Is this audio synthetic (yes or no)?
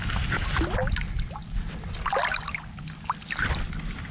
no